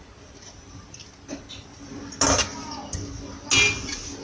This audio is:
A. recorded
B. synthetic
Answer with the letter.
A